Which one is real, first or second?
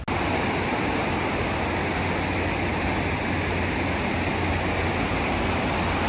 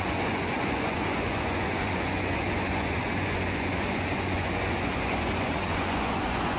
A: first